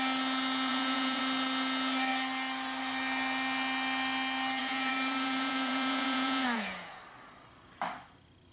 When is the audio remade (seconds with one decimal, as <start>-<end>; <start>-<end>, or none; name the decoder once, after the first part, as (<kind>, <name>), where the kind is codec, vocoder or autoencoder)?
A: 0.7-1.2 (vocoder, Vocos); 4.6-7.0